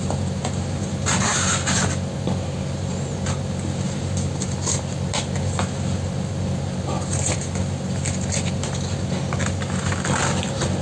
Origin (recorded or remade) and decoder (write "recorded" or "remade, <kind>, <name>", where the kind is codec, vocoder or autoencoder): recorded